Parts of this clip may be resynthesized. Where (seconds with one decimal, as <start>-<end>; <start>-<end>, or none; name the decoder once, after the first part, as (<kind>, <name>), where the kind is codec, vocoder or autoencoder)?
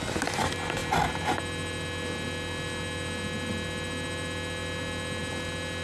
none